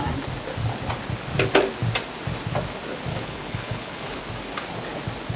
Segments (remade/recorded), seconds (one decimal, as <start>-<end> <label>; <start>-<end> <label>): 0.0-3.1 recorded; 3.1-4.2 remade; 4.2-5.4 recorded